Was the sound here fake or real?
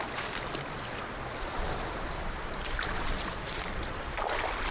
real